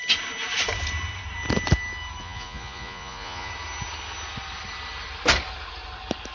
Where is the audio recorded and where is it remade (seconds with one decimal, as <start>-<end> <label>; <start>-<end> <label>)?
0.0-2.2 recorded; 2.2-3.5 remade; 3.5-6.3 recorded